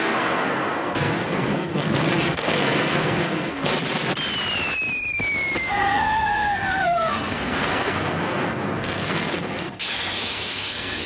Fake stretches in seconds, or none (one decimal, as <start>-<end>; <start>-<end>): 0.0-3.7; 5.7-11.1